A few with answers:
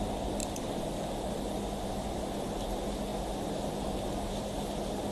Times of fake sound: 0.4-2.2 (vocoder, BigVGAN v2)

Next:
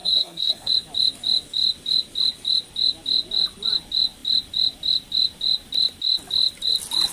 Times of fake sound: 0.0-0.7 (codec, SNAC)

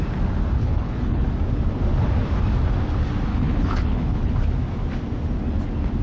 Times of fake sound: 0.6-1.3 (codec, HILCodec); 3.3-4.3